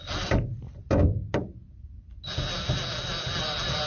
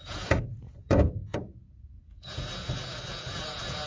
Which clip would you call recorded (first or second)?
first